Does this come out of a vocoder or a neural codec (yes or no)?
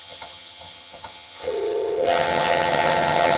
yes